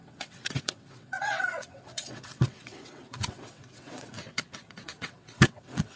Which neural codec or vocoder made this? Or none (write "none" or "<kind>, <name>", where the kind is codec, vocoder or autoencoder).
vocoder, WaveNeXt